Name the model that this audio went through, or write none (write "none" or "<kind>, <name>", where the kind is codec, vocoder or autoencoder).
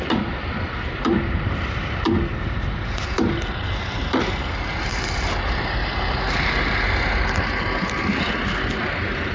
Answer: none